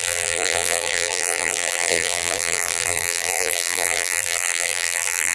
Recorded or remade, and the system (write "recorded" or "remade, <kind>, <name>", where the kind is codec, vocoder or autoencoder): remade, vocoder, BigVGAN v2